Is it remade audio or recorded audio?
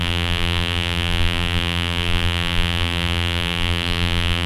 remade